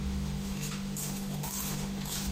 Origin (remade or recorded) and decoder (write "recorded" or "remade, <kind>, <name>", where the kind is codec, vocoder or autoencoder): remade, autoencoder, DAC-VAE